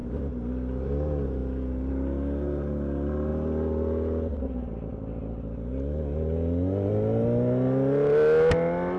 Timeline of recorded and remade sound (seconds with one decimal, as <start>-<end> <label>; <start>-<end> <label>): 0.0-9.0 recorded